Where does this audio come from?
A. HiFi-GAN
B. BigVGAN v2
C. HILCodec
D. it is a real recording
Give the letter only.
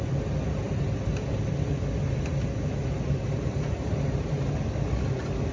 D